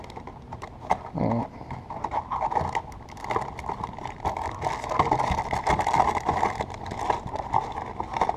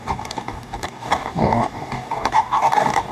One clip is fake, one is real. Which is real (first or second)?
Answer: first